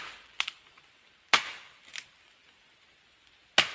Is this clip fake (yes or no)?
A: no